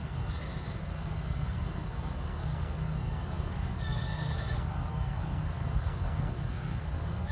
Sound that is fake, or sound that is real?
fake